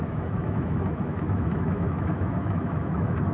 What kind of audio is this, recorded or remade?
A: remade